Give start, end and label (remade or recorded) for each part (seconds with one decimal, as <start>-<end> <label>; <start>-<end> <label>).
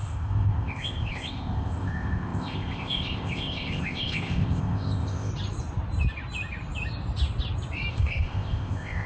0.0-5.3 remade; 5.3-7.9 recorded; 7.9-9.1 remade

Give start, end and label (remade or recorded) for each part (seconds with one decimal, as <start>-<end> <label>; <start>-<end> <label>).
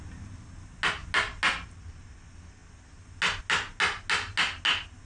0.0-5.1 recorded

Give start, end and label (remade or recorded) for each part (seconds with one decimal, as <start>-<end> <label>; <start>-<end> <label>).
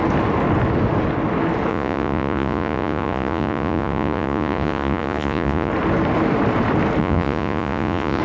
0.0-1.7 recorded; 1.7-5.7 remade; 5.7-7.0 recorded; 7.0-8.2 remade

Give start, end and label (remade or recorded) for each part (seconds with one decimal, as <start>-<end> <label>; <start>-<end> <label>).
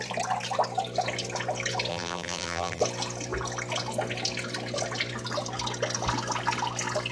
0.0-1.9 recorded; 1.9-2.8 remade; 2.8-7.1 recorded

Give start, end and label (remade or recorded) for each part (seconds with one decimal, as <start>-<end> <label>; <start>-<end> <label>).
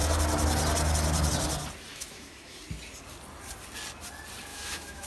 0.0-1.9 recorded; 1.9-2.6 remade; 2.6-4.5 recorded; 4.5-5.1 remade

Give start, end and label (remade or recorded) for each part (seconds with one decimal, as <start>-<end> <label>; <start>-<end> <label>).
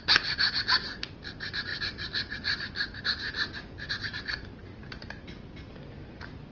0.0-6.5 recorded